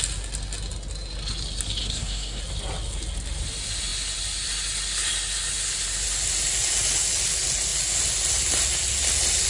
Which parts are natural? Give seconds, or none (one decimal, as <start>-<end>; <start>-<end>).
0.0-1.8; 2.4-9.5